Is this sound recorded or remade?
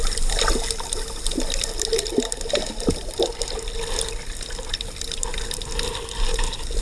recorded